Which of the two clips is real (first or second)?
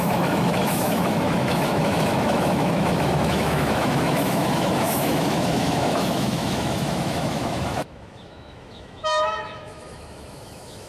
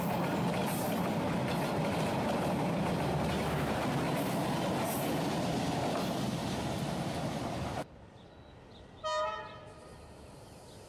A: second